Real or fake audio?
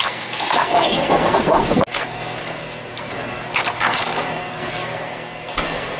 fake